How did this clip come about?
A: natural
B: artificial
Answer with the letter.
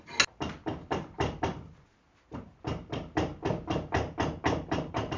A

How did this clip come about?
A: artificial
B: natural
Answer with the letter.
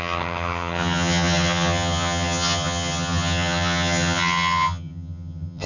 A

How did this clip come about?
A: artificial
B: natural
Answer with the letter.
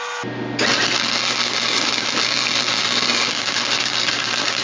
B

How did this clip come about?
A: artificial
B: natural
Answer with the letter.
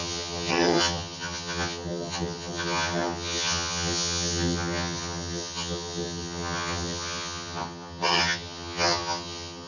A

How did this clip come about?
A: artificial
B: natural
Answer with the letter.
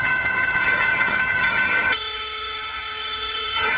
A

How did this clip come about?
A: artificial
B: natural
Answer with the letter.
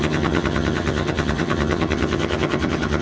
A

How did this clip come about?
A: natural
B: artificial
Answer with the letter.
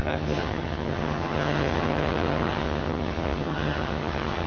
B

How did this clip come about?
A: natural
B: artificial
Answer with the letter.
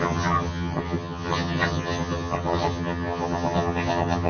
B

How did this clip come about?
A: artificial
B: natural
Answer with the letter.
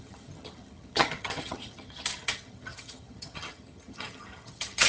A